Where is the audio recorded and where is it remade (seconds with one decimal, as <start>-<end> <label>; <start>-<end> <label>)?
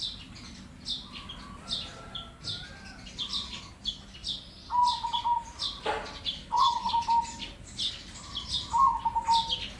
0.0-6.4 recorded; 6.4-6.9 remade; 6.9-9.8 recorded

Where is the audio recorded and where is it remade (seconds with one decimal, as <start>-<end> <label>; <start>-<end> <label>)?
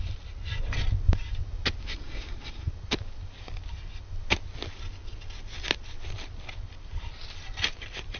0.0-1.8 recorded; 1.8-2.7 remade; 2.7-8.2 recorded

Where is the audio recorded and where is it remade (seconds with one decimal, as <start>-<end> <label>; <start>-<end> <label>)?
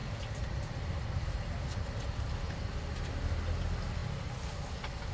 0.0-5.1 recorded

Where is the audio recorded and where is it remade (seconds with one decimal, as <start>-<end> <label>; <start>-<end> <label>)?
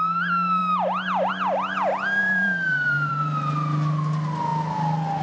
0.0-2.2 recorded; 2.2-3.1 remade; 3.1-5.2 recorded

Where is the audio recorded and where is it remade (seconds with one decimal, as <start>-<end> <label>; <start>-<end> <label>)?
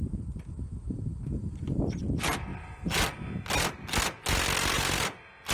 0.0-5.5 recorded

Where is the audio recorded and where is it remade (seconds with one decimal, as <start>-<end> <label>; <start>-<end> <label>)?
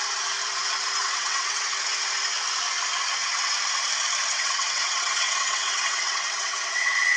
0.0-1.0 recorded; 1.0-1.7 remade; 1.7-4.3 recorded; 4.3-7.2 remade